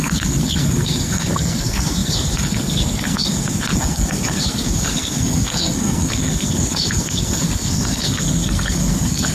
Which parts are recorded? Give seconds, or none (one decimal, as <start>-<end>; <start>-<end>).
none